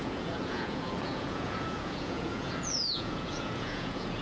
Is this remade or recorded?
remade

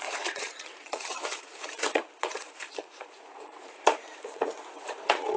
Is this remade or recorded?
remade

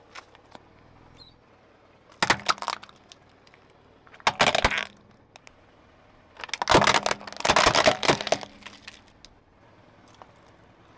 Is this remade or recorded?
recorded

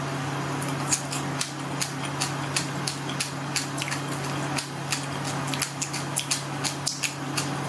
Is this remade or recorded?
recorded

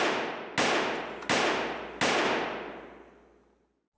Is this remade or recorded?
recorded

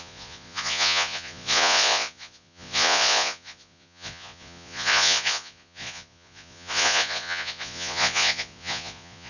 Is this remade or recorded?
remade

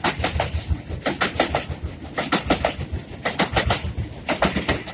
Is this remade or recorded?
recorded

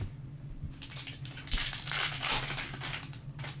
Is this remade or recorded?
recorded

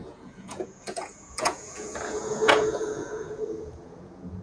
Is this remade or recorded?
remade